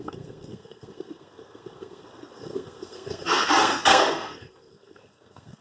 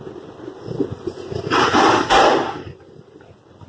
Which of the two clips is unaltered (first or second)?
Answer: second